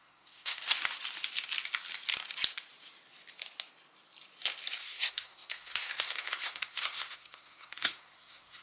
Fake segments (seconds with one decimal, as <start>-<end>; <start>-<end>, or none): 0.0-0.6; 4.8-8.6